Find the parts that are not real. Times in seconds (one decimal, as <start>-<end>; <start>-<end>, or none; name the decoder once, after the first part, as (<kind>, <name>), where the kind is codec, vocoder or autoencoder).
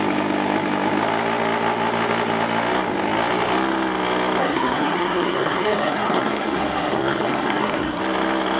4.4-8.0 (codec, SNAC)